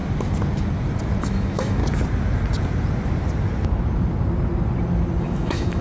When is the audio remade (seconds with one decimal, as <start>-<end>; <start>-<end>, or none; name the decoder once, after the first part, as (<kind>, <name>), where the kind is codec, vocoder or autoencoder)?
1.2-1.8 (autoencoder, DAC-VAE); 5.2-5.8